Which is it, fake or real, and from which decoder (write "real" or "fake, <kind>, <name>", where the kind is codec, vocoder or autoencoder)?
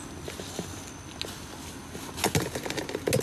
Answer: real